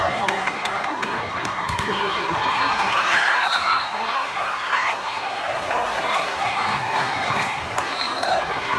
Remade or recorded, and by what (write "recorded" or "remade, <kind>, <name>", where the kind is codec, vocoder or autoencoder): remade, codec, SNAC